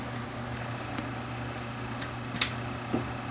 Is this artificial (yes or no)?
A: no